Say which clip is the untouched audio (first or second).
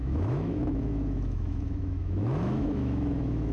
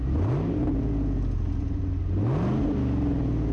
second